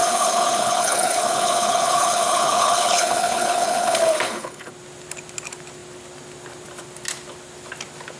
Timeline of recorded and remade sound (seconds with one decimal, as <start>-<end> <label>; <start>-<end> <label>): 0.0-4.7 remade; 4.7-8.2 recorded

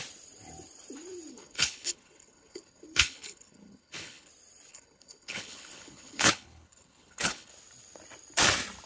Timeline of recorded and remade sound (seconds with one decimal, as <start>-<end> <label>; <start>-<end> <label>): 0.0-1.3 recorded; 1.3-4.3 remade; 4.3-4.7 recorded; 4.7-7.5 remade; 7.5-8.9 recorded

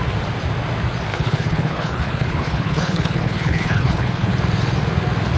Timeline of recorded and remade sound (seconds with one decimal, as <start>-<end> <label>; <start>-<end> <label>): 0.0-1.1 recorded; 1.1-4.3 remade; 4.3-5.4 recorded